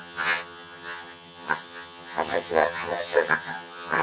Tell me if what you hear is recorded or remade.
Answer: remade